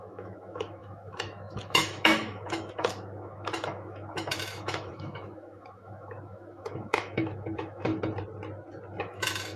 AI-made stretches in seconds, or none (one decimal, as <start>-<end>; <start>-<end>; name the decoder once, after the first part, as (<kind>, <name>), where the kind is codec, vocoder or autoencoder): 0.0-7.9 (autoencoder, DAC-VAE); 9.0-9.6